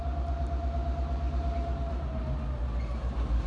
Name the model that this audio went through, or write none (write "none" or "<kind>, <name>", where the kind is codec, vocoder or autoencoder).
none